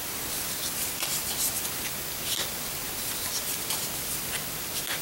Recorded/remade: recorded